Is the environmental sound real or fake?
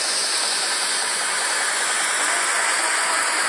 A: fake